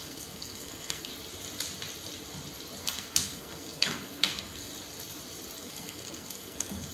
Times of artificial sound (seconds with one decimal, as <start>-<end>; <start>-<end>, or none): 0.0-1.1; 2.8-4.7; 5.6-6.9